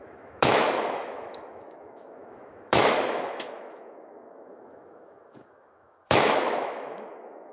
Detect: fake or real fake